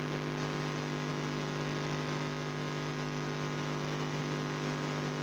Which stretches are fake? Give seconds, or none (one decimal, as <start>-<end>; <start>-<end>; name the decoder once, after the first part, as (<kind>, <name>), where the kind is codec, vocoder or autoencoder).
1.1-4.2 (autoencoder, DAC-VAE)